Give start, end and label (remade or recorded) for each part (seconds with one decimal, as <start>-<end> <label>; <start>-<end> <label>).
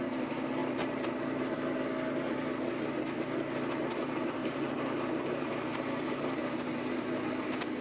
0.0-0.6 recorded; 0.6-1.4 remade; 1.4-4.4 recorded; 4.4-6.7 remade; 6.7-7.8 recorded